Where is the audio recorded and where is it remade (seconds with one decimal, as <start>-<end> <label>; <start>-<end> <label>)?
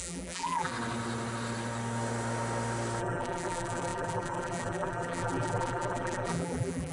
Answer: 0.0-0.7 remade; 0.7-3.0 recorded; 3.0-6.9 remade